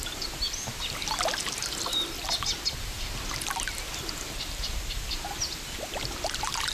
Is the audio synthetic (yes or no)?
no